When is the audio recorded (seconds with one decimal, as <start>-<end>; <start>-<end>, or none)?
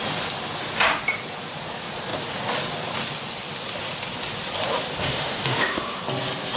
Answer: 0.0-5.0; 6.0-6.6